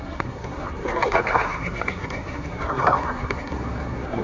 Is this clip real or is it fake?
fake